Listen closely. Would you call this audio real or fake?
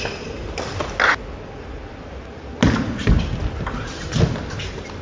real